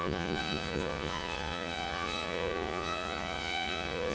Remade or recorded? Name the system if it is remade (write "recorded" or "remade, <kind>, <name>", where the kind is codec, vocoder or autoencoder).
remade, vocoder, Vocos